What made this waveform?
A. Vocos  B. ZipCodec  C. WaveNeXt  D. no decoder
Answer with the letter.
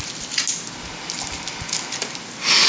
D